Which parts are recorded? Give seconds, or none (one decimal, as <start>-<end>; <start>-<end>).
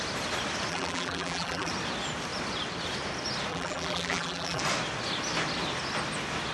0.0-0.7; 1.7-3.5; 4.6-6.5